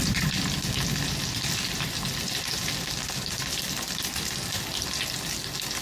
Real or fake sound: real